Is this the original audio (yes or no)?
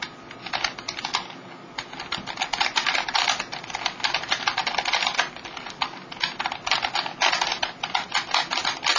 yes